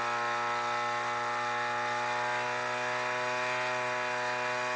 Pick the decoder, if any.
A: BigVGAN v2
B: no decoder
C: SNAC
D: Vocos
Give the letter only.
B